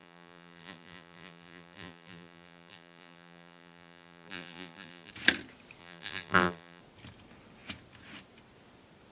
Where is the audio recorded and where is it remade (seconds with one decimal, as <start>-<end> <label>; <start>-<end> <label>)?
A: 0.0-5.1 remade; 5.1-5.8 recorded; 5.8-6.8 remade; 6.8-9.1 recorded